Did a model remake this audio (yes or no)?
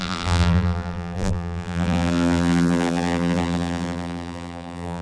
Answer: yes